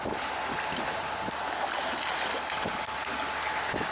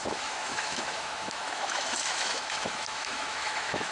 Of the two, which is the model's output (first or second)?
second